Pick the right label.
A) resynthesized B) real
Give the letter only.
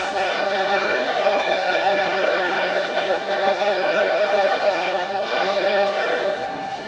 A